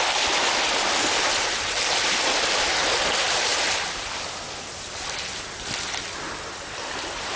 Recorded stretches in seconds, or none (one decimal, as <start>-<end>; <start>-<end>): 0.0-7.4